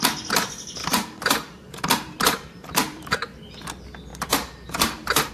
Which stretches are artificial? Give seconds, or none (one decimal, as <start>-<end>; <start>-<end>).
0.8-3.5; 4.1-5.3